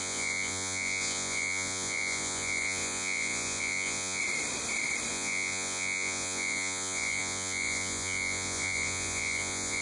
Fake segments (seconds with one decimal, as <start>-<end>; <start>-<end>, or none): 0.0-4.2; 5.1-9.8